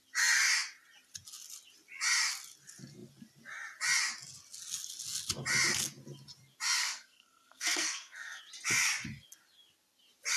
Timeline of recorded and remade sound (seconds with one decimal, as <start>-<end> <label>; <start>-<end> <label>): 0.0-6.8 recorded; 6.8-8.4 remade; 8.4-10.4 recorded